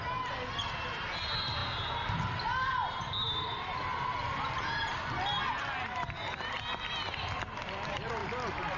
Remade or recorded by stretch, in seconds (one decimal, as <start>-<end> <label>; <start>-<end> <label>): 0.0-8.8 recorded